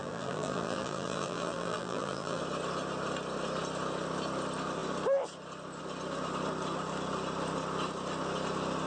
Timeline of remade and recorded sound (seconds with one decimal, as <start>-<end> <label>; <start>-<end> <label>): 0.0-2.4 remade; 2.4-8.9 recorded